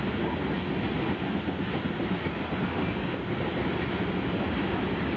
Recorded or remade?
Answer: recorded